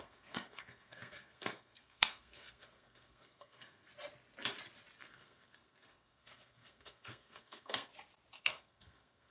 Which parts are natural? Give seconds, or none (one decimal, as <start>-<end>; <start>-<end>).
3.9-5.0; 7.9-8.4